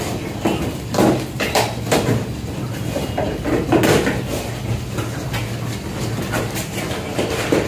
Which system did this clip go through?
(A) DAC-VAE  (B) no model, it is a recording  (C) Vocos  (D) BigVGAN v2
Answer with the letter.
B